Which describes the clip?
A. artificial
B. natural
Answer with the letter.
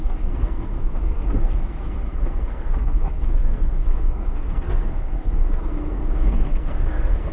A